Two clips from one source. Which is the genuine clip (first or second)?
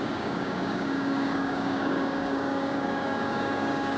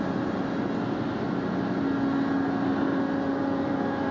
second